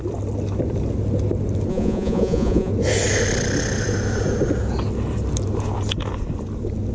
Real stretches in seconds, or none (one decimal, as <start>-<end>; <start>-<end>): 0.0-1.7; 2.7-6.9

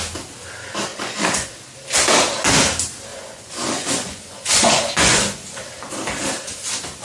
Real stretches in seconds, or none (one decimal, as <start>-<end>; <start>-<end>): 0.0-0.9; 1.5-3.1; 5.6-7.0

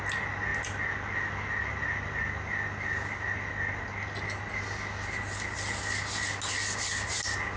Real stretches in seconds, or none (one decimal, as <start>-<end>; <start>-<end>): 0.0-7.6

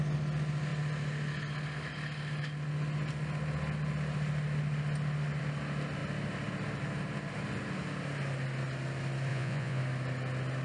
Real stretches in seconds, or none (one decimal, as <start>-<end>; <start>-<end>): 0.0-9.3; 9.8-10.6

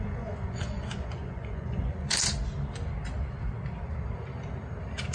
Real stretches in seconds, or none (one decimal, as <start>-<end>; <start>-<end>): 2.2-5.1

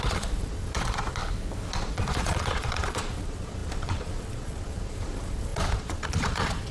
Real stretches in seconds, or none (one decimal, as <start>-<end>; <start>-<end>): 1.2-1.7